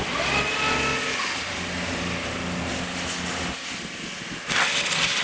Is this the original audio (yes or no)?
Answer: yes